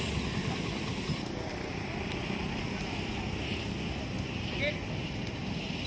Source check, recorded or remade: recorded